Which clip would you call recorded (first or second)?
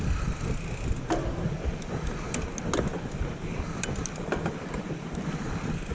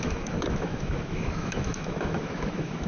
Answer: first